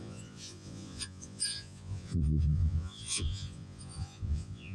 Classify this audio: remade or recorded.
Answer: remade